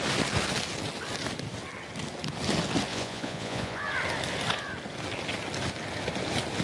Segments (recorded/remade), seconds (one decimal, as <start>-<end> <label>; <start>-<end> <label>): 0.0-2.9 recorded; 2.9-3.8 remade; 3.8-6.6 recorded